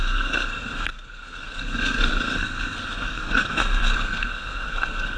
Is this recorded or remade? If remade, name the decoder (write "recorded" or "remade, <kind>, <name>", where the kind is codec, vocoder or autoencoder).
remade, codec, SNAC